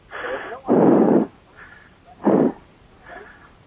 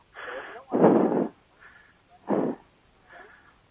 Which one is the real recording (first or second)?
second